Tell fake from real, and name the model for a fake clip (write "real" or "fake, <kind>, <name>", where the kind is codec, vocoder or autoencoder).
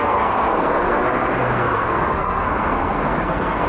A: fake, codec, SNAC